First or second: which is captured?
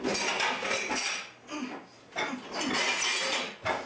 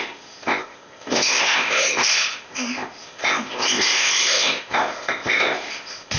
first